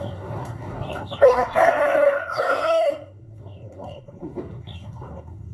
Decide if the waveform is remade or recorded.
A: remade